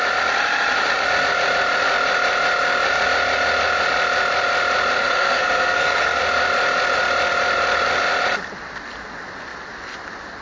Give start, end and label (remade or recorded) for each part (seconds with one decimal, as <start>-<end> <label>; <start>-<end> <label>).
0.0-5.0 recorded; 5.0-6.2 remade; 6.2-10.4 recorded